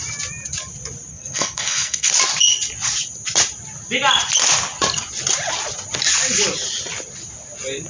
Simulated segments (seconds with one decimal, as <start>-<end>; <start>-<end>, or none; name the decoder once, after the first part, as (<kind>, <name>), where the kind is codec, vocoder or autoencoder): 1.1-2.1 (codec, SNAC)